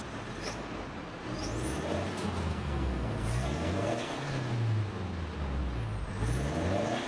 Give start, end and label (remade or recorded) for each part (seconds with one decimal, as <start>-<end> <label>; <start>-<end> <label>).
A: 0.0-2.5 recorded; 2.5-4.3 remade; 4.3-7.1 recorded